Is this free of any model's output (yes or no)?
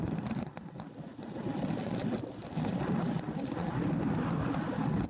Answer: yes